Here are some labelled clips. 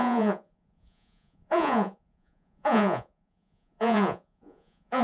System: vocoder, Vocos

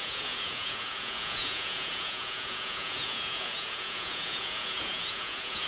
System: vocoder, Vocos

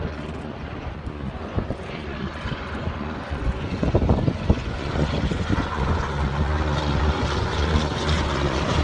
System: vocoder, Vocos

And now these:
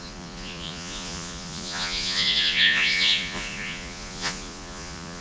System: vocoder, Vocos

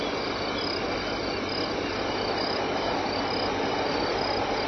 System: none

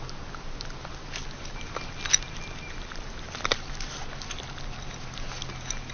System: none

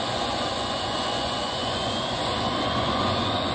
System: vocoder, Vocos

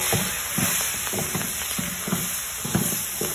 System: none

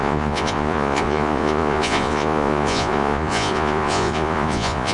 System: vocoder, Vocos